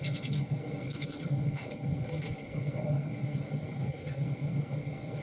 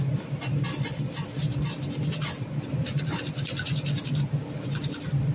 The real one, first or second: second